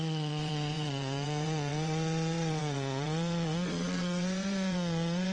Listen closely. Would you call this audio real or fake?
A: fake